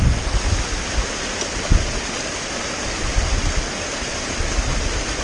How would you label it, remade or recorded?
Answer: recorded